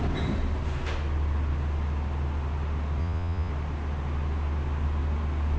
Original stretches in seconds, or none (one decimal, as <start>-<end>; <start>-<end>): 0.0-3.0; 3.5-5.6